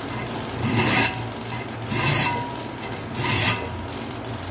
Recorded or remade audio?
recorded